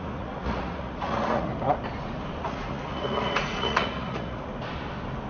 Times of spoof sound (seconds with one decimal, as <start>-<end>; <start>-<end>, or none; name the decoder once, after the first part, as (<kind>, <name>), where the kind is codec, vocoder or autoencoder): 0.0-1.5 (vocoder, Vocos); 2.4-4.5